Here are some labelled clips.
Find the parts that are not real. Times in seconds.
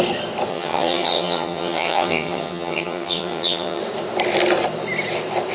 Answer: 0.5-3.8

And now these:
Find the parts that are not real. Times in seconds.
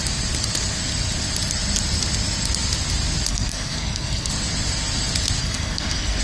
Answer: 3.3-4.3; 5.4-6.2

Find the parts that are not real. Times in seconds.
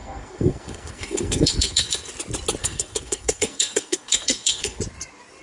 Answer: 0.0-2.1; 2.6-4.8